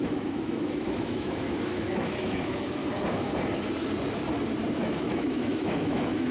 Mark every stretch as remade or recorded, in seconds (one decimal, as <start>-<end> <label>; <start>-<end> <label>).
0.0-2.8 remade; 2.8-4.7 recorded; 4.7-6.3 remade